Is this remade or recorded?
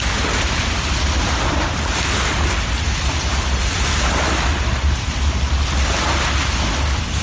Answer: recorded